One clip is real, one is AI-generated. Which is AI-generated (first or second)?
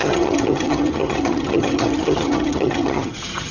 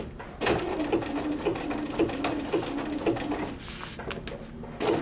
first